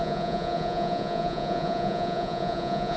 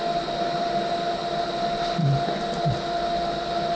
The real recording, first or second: second